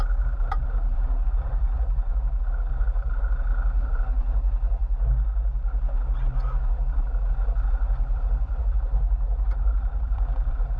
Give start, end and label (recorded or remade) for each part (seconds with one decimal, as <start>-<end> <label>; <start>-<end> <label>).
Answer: 0.0-2.1 remade; 2.1-2.7 recorded; 2.7-4.8 remade; 4.8-7.2 recorded; 7.2-10.8 remade